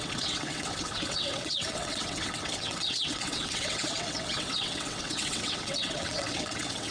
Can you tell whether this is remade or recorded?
remade